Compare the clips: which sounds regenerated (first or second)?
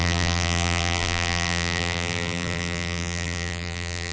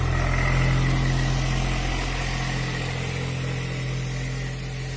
first